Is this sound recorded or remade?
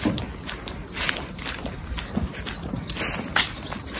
recorded